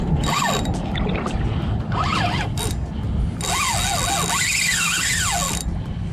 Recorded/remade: recorded